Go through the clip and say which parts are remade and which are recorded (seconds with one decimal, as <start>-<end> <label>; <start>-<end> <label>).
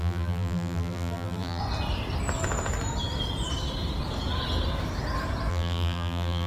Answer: 0.0-1.6 remade; 1.6-5.5 recorded; 5.5-6.5 remade